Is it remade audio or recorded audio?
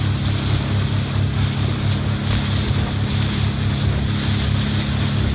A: recorded